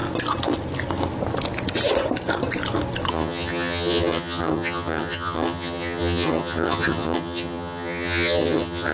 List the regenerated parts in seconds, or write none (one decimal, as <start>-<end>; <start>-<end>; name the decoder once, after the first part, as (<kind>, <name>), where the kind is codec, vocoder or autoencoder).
3.1-8.9 (vocoder, HiFi-GAN)